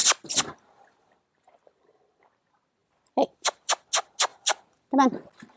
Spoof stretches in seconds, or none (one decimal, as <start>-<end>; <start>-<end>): 0.0-2.2; 2.8-3.7; 4.3-4.9